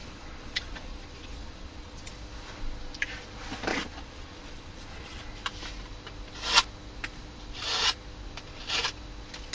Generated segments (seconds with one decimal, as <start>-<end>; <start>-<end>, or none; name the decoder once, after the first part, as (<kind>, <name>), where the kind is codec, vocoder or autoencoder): 0.0-2.1 (vocoder, Vocos); 3.7-5.2